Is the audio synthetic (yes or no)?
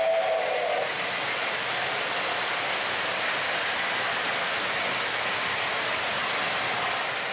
no